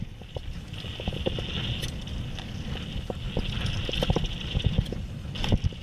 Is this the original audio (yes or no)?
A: yes